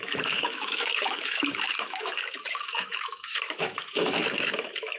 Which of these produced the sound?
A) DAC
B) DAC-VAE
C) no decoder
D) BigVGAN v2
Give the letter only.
B